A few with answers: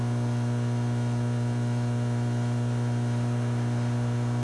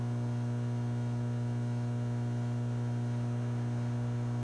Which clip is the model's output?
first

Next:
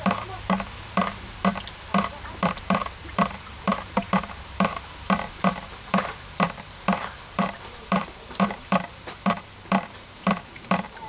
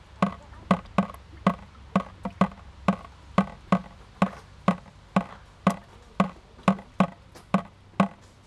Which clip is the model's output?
first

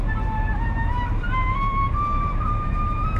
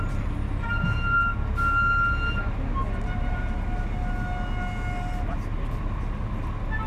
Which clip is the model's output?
first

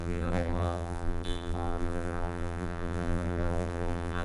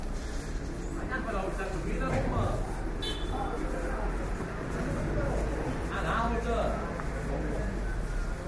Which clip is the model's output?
first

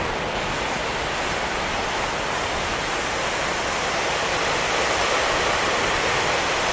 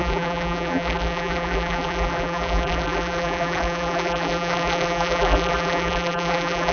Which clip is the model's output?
second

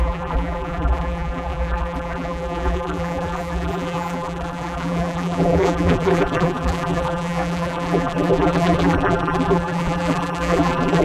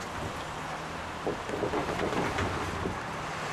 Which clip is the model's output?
first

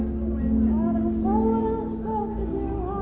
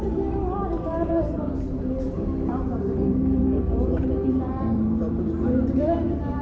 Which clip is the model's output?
second